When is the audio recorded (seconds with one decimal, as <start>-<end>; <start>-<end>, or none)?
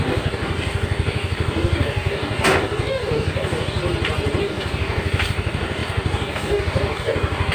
3.8-4.4